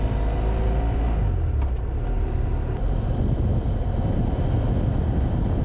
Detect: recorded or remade recorded